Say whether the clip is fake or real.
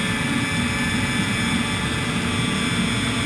real